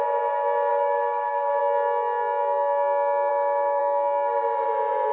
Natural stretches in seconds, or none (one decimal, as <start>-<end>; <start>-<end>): 0.0-0.7; 1.6-3.3; 3.8-5.1